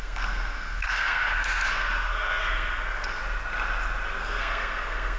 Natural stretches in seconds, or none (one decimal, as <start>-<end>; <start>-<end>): 3.2-4.2